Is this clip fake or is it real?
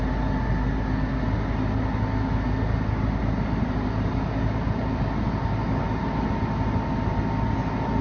real